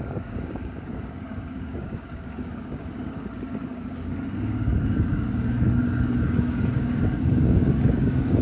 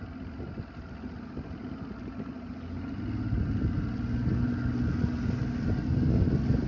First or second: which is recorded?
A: second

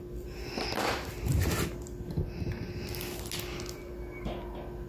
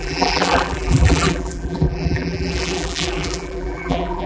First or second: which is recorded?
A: first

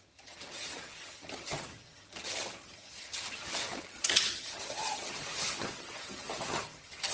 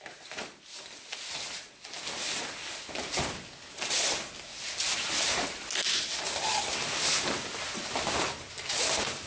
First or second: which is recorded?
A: second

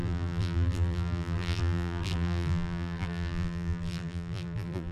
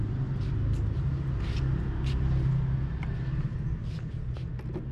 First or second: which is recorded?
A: second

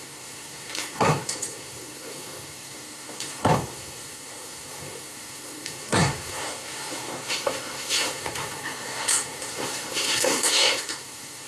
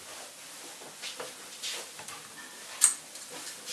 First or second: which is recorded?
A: second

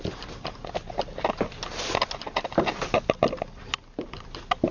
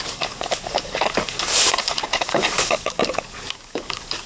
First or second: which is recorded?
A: first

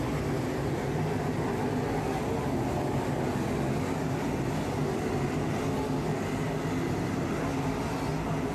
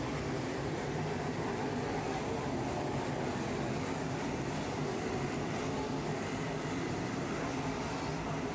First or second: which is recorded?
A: first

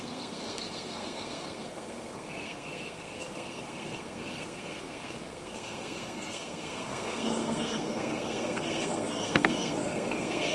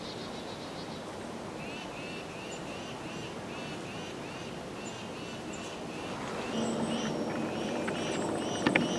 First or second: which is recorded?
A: second